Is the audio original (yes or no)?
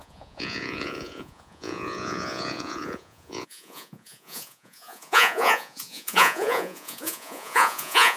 no